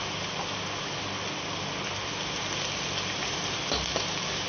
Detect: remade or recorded recorded